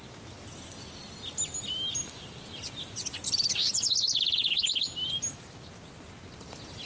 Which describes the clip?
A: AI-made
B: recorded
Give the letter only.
B